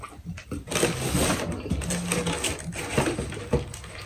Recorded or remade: recorded